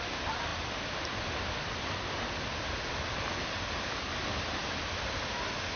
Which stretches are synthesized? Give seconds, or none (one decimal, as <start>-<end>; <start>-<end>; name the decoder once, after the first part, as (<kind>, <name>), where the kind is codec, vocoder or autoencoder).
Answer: none